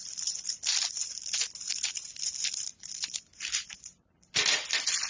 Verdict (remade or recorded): recorded